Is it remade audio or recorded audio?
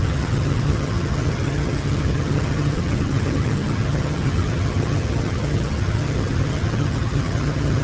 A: remade